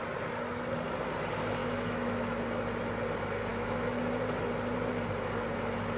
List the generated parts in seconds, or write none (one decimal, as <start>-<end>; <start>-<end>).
1.6-2.4; 3.5-4.0